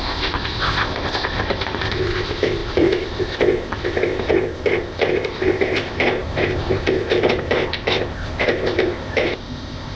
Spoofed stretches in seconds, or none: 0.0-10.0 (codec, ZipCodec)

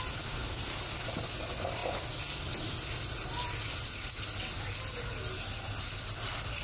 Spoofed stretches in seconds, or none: none

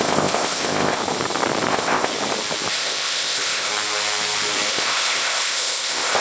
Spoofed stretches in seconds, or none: 0.0-1.0 (codec, ZipCodec); 1.7-2.1; 2.7-3.7; 4.7-6.2

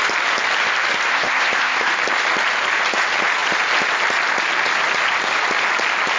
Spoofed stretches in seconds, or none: 1.1-1.9 (codec, ZipCodec)

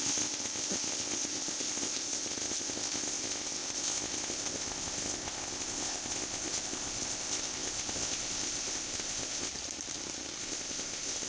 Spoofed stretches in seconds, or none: 0.0-9.5 (codec, ZipCodec); 10.4-11.3

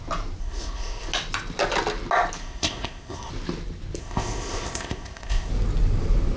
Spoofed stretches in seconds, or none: 0.4-1.1 (codec, ZipCodec); 2.4-3.3; 4.0-5.5

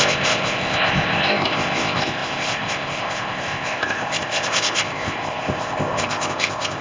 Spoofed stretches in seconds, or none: 0.0-6.8 (codec, ZipCodec)

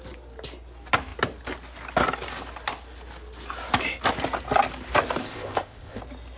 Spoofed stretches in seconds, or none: 5.2-6.0 (codec, ZipCodec)